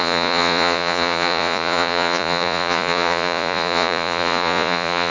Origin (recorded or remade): remade